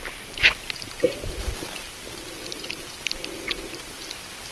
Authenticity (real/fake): real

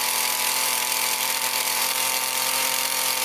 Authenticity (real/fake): fake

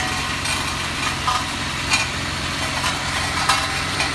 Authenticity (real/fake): fake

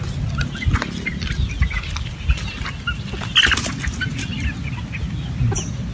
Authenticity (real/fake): real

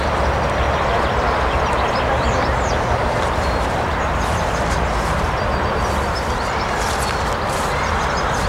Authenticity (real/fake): real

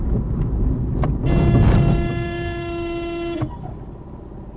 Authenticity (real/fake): real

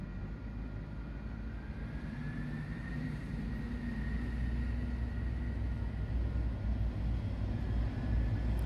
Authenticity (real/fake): real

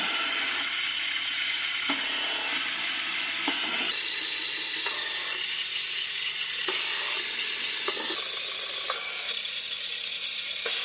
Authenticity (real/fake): real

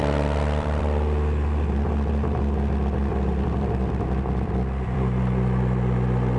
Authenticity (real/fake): fake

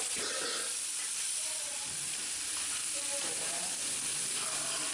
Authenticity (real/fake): fake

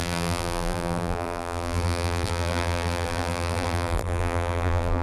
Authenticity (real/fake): fake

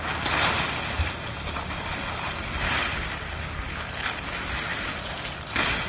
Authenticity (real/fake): real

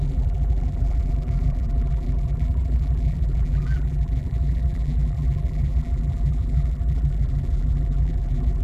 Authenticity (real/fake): fake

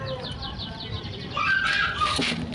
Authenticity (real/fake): fake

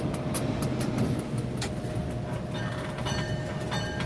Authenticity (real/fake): real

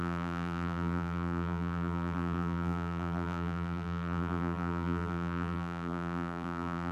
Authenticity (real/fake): fake